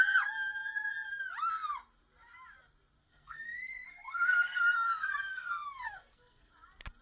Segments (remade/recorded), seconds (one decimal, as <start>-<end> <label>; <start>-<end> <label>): 0.0-3.0 recorded; 3.0-6.5 remade; 6.5-7.0 recorded